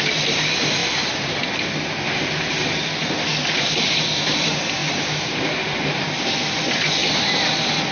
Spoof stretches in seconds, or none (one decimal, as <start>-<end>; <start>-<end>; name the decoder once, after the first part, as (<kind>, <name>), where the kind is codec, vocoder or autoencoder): 0.8-1.4 (vocoder, BigVGAN v2); 4.8-6.3; 7.0-7.5